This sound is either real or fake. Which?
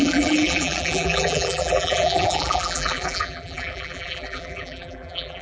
fake